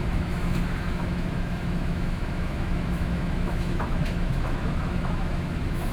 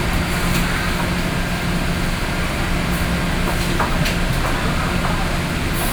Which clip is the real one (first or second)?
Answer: second